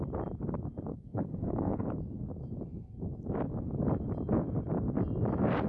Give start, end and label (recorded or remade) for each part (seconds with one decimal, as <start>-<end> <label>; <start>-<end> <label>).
0.0-0.9 recorded; 0.9-1.8 remade; 1.8-5.7 recorded